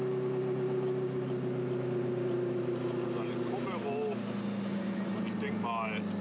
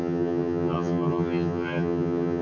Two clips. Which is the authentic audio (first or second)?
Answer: first